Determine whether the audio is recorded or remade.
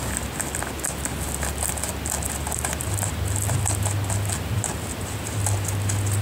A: recorded